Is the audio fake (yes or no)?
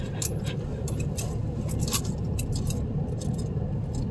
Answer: no